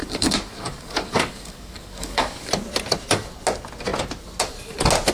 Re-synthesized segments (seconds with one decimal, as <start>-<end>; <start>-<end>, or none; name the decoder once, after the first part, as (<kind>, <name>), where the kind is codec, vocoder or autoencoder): 0.0-2.5 (codec, DAC)